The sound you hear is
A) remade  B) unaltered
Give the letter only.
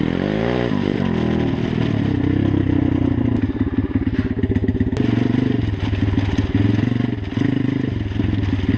B